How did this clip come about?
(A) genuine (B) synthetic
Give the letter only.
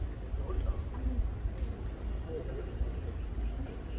A